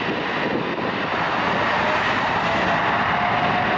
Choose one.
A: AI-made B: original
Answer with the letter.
B